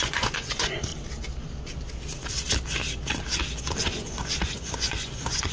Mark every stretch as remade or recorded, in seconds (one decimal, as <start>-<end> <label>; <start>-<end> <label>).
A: 0.0-0.9 remade; 0.9-3.8 recorded; 3.8-5.5 remade